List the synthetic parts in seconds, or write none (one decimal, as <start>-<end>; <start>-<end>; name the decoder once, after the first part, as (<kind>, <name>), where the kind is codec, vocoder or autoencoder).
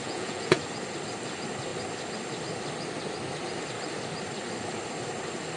0.0-0.6 (vocoder, Vocos)